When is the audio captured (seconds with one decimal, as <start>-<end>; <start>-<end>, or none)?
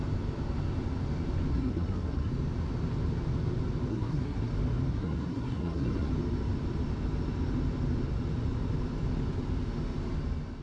0.0-1.5; 2.3-3.9; 4.5-4.9; 6.1-10.6